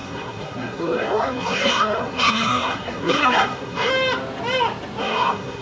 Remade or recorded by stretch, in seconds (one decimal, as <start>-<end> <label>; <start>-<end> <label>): 0.0-3.9 remade; 3.9-5.0 recorded; 5.0-5.6 remade